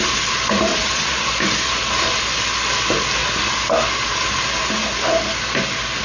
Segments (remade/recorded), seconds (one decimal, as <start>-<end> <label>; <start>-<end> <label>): 0.0-0.7 recorded; 0.7-1.3 remade; 1.3-6.0 recorded